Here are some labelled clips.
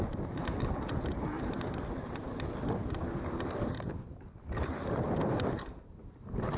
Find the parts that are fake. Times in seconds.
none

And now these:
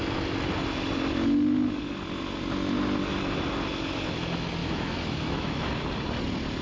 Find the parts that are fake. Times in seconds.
4.6-5.7

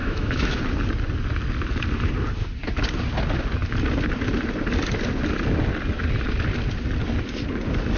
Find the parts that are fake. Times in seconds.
0.0-0.6

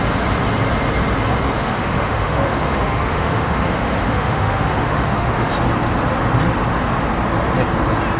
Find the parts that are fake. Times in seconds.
1.6-5.5

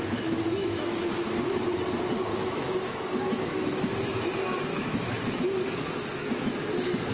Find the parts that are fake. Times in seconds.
0.0-1.1; 2.3-4.3; 4.7-5.4; 6.1-7.1

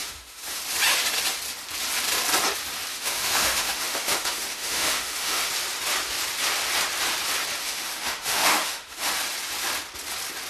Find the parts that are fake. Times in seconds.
0.0-0.6; 2.9-5.5; 7.6-9.1

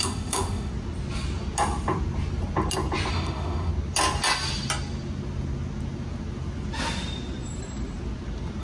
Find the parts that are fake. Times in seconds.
0.0-0.7; 3.1-3.7

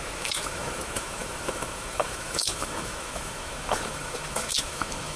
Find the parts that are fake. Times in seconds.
0.0-5.2